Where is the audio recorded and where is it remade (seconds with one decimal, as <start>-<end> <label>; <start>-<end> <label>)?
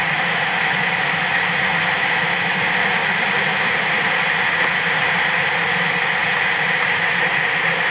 0.0-6.2 recorded; 6.2-7.3 remade; 7.3-7.9 recorded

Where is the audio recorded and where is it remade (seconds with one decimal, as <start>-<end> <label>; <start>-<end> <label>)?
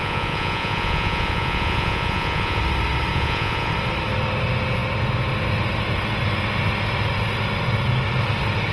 0.0-2.6 remade; 2.6-3.1 recorded; 3.1-3.7 remade; 3.7-8.7 recorded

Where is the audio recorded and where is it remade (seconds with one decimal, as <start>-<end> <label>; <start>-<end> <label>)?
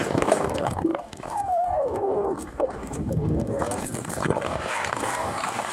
0.0-5.7 remade